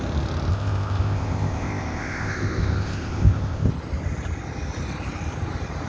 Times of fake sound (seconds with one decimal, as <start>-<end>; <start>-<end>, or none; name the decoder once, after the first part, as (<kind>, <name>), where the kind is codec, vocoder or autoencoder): 0.5-3.7 (codec, ZipCodec)